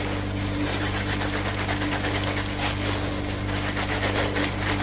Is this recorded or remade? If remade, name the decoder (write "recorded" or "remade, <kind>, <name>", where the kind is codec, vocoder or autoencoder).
recorded